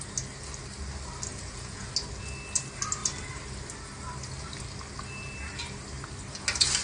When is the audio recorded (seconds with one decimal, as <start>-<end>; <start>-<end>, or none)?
0.0-1.3; 1.9-6.8